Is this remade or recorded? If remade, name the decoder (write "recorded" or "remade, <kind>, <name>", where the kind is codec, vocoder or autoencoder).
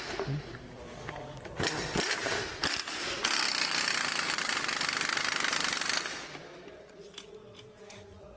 recorded